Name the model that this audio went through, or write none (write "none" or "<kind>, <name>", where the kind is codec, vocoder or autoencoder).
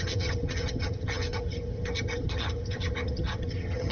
vocoder, HiFi-GAN